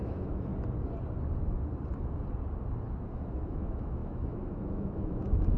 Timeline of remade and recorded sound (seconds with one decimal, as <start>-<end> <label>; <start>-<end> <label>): 0.0-0.5 remade; 0.5-3.1 recorded; 3.1-5.6 remade